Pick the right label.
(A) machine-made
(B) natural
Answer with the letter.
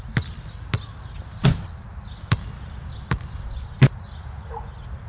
B